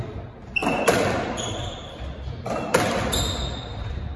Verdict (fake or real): real